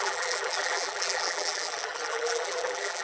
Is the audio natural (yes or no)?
no